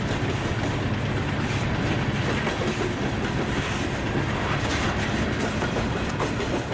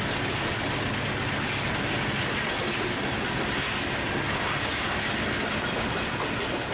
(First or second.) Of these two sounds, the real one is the second